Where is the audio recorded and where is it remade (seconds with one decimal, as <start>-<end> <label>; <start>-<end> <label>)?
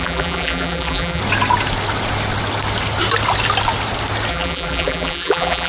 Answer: 0.0-1.2 remade; 1.2-4.3 recorded; 4.3-5.7 remade